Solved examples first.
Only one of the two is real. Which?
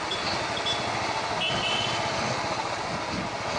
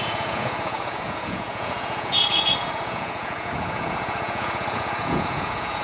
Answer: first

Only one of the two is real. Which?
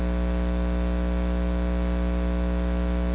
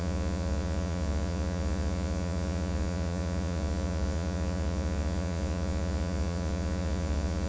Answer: first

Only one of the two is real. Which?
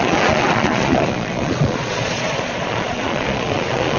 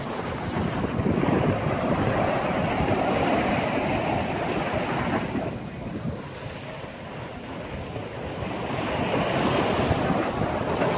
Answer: second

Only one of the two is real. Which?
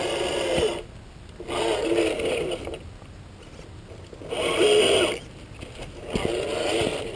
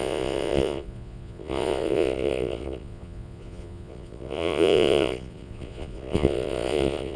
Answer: first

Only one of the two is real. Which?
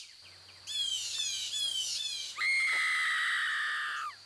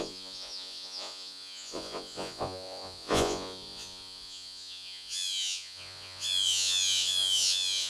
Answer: first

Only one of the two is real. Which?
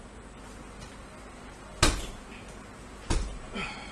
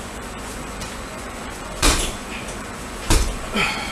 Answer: first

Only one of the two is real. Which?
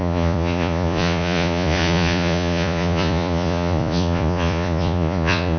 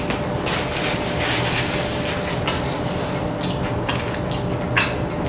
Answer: second